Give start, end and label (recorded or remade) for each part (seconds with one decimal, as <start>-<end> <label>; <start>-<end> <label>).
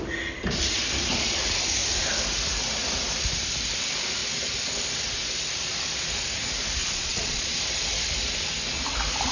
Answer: 0.0-6.8 recorded; 6.8-7.6 remade; 7.6-9.3 recorded